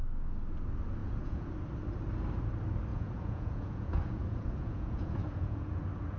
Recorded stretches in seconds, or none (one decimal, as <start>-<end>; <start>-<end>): 0.0-1.0; 1.5-2.9; 5.8-6.2